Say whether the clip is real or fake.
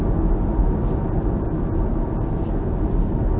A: real